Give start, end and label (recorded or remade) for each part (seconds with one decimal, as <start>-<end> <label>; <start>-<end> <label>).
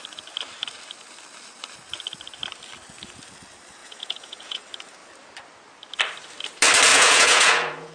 0.0-3.8 recorded; 3.8-4.6 remade; 4.6-6.9 recorded; 6.9-7.9 remade